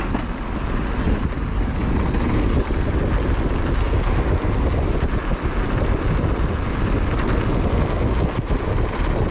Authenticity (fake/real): real